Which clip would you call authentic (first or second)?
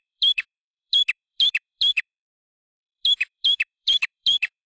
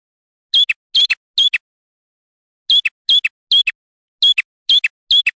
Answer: second